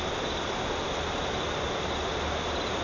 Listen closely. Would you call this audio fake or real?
real